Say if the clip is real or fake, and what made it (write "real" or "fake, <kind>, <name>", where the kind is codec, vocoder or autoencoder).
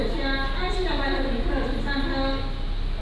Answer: real